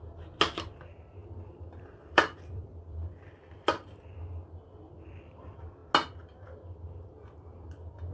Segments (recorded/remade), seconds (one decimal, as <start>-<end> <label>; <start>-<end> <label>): 0.0-1.2 recorded; 1.2-3.3 remade; 3.3-8.1 recorded